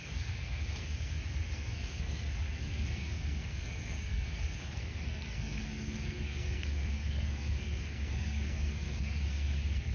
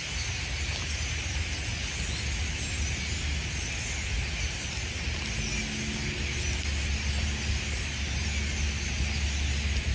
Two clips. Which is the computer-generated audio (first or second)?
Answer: first